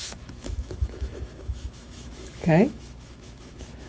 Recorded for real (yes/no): no